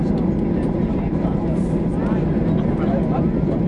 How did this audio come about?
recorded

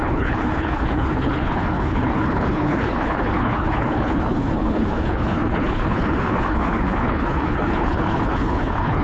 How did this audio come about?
remade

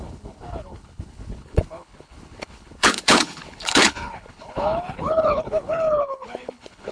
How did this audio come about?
remade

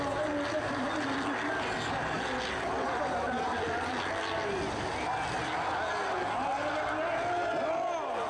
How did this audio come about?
recorded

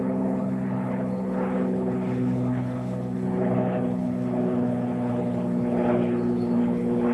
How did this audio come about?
remade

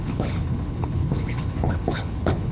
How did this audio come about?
remade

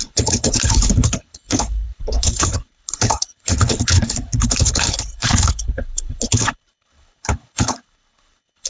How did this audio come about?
remade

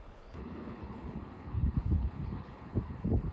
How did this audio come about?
remade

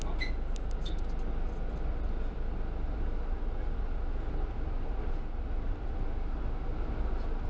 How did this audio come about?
recorded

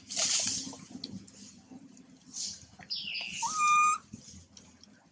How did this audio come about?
recorded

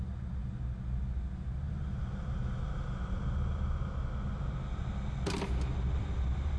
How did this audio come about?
recorded